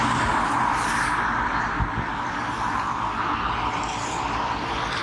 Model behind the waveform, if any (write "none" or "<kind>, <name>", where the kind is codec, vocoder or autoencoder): none